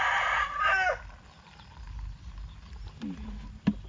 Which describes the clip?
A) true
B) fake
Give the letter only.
A